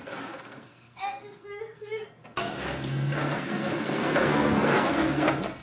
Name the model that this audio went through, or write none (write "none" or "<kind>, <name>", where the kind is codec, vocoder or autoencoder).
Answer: codec, SNAC